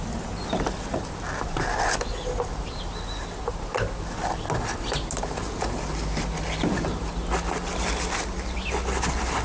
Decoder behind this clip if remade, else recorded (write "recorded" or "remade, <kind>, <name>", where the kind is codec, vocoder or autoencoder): recorded